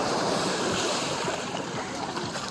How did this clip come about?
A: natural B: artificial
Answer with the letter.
B